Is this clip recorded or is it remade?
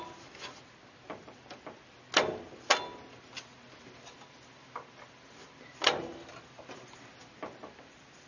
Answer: recorded